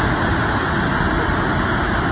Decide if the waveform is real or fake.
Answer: real